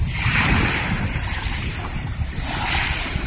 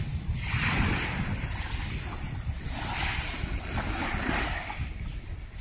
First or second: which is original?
second